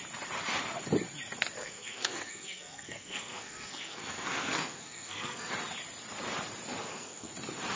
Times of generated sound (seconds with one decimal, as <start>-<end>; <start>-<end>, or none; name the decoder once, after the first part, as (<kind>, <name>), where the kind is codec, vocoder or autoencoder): 1.6-5.5 (codec, SNAC); 6.8-7.3